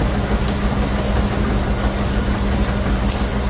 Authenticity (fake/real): real